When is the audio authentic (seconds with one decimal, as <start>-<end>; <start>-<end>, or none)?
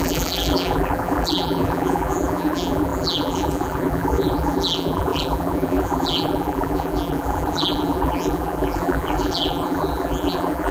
none